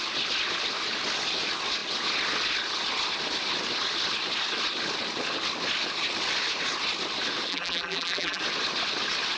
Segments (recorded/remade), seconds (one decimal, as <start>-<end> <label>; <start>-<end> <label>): 0.0-7.5 recorded; 7.5-8.4 remade; 8.4-9.4 recorded